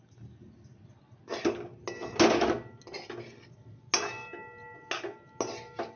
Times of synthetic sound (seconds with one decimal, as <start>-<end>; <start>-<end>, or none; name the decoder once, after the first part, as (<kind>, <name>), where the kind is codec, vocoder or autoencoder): none